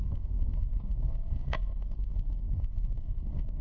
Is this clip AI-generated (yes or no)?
yes